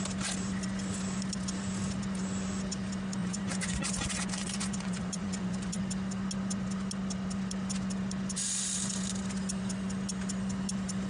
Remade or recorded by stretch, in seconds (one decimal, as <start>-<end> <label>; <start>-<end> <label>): 0.0-3.2 recorded; 3.2-5.8 remade; 5.8-11.1 recorded